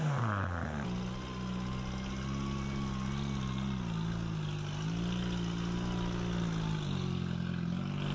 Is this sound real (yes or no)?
yes